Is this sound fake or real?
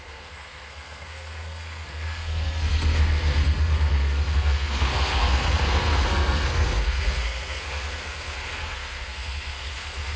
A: fake